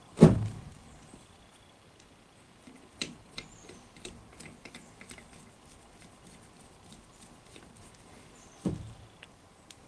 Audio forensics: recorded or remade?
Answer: recorded